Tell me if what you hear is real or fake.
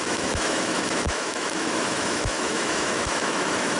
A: fake